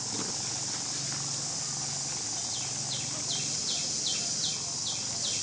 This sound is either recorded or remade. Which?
recorded